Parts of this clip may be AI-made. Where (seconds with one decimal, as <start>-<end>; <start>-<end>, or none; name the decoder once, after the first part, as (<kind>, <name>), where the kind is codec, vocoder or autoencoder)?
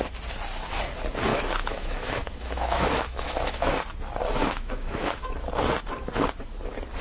1.3-3.7 (autoencoder, DAC-VAE); 4.4-5.3